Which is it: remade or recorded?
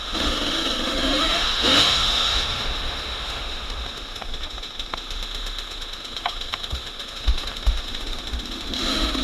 remade